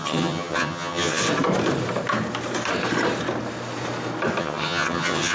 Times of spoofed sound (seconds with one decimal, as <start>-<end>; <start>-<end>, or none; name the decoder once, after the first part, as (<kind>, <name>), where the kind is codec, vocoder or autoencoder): 0.0-1.2 (vocoder, HiFi-GAN); 4.4-5.3